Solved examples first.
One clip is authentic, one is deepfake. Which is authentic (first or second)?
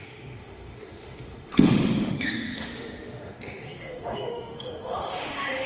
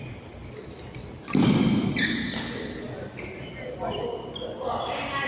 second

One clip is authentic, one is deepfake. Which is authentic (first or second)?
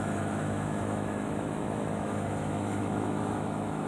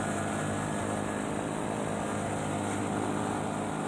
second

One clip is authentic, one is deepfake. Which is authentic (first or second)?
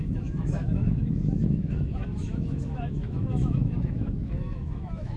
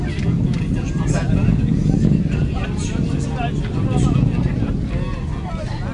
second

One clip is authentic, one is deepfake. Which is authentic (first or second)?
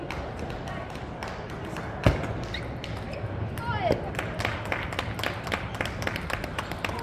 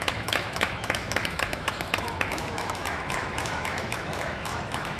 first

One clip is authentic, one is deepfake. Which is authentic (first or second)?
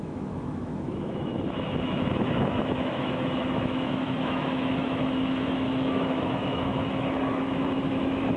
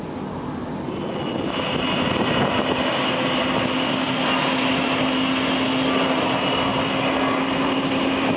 second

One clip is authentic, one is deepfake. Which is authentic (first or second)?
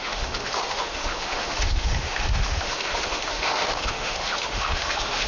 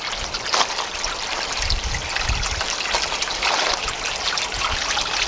second